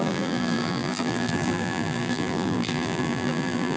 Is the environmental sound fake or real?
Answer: fake